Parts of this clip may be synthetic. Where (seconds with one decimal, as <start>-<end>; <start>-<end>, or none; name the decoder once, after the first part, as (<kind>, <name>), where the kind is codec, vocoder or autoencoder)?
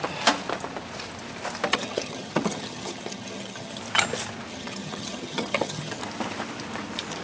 1.7-3.8 (vocoder, HiFi-GAN); 4.5-6.0